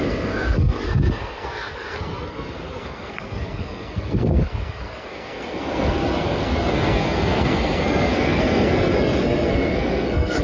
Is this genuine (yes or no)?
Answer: no